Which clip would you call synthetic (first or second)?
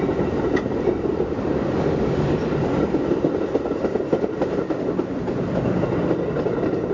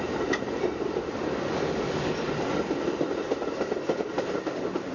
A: first